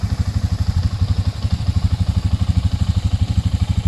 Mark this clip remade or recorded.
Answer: recorded